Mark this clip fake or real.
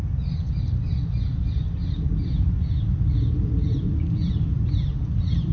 real